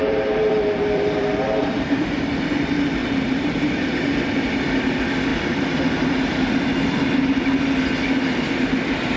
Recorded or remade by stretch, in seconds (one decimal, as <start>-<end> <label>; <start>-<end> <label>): 0.0-2.2 remade; 2.2-3.0 recorded; 3.0-3.7 remade; 3.7-9.2 recorded